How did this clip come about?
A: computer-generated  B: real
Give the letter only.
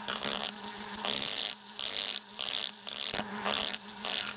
B